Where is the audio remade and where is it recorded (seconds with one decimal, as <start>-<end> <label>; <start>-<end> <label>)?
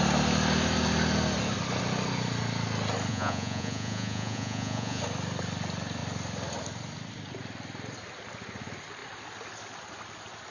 0.0-3.1 recorded; 3.1-5.0 remade; 5.0-10.5 recorded